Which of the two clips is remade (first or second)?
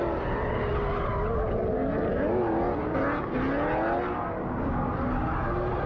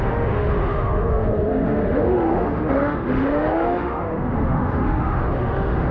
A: second